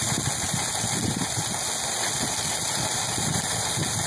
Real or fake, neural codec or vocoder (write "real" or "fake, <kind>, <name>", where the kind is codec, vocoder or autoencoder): real